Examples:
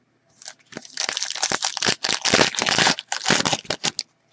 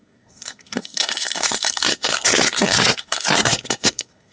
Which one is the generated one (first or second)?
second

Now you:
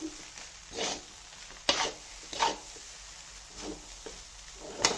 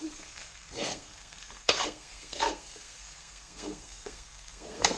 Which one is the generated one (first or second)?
second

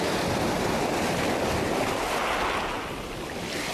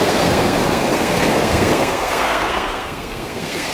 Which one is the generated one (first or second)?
second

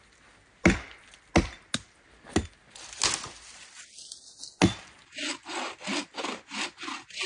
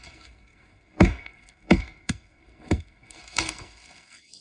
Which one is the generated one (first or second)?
second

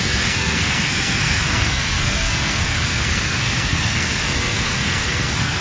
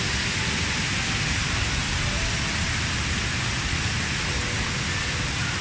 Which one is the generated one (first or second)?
first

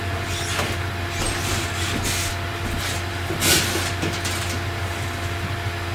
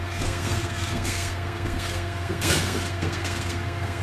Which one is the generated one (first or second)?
second